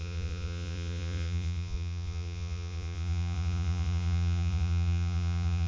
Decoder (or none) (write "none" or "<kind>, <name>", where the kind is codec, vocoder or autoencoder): vocoder, Vocos